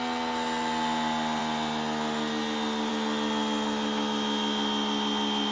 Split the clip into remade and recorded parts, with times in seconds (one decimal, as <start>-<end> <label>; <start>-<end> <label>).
0.0-5.5 recorded